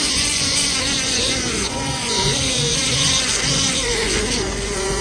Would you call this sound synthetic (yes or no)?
yes